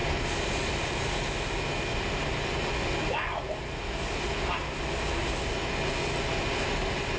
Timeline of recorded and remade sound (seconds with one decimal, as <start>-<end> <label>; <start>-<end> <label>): 0.0-7.2 recorded